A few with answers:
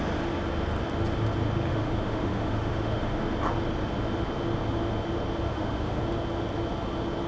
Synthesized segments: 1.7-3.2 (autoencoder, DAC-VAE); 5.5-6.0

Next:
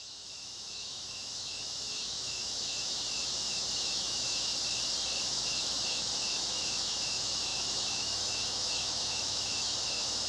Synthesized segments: 0.0-4.5 (autoencoder, DAC-VAE); 5.3-10.3

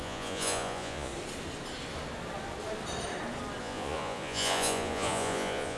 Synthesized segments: 0.0-1.1 (vocoder, Vocos); 3.6-5.8

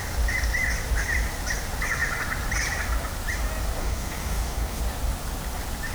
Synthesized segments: 3.8-4.8 (codec, DAC)

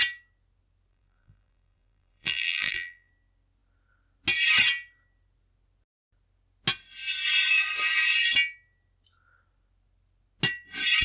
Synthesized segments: 0.9-3.1 (vocoder, BigVGAN v2)

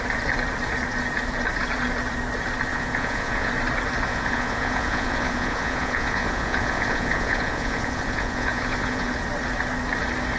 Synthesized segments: 2.7-3.5 (vocoder, Vocos); 4.1-9.1

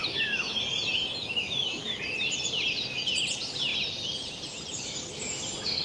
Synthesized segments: 0.0-0.6 (autoencoder, DAC-VAE); 1.2-1.9